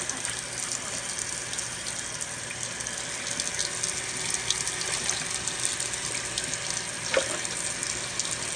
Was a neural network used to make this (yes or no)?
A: no